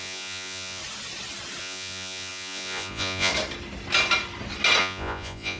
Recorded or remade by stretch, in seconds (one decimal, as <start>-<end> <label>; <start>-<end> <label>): 0.0-0.8 remade; 0.8-1.6 recorded; 1.6-3.3 remade; 3.3-4.8 recorded; 4.8-5.6 remade